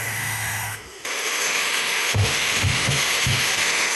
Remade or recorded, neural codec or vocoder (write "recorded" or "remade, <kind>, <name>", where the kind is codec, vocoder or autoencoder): remade, autoencoder, DAC-VAE